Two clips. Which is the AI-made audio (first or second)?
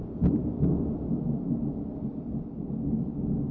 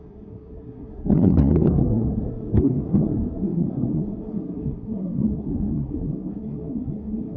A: second